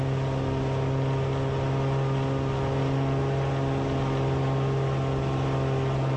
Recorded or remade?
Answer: recorded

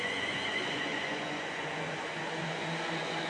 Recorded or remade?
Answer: remade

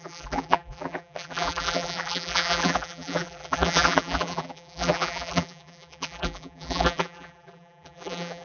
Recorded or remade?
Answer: remade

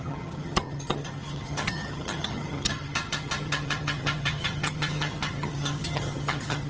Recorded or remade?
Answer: remade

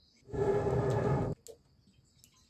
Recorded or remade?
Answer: recorded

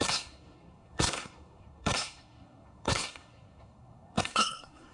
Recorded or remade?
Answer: remade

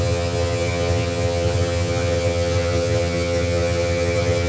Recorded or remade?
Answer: remade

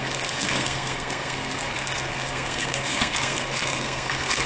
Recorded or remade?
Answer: remade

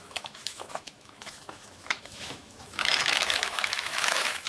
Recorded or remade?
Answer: remade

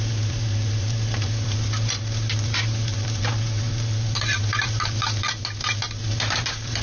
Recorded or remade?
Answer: remade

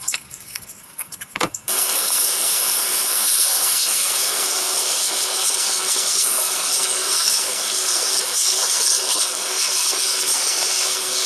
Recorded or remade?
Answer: remade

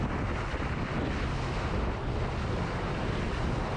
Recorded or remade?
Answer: recorded